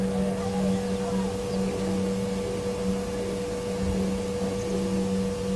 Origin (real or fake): real